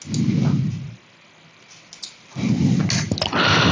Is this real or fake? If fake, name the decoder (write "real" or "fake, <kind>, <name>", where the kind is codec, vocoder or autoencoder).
real